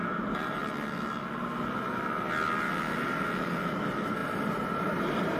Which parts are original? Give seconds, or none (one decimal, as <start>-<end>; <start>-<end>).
0.6-3.8